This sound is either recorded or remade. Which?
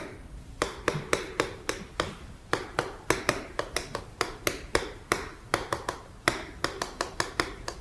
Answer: remade